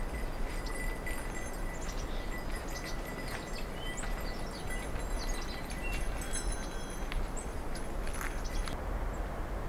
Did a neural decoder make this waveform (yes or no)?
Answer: no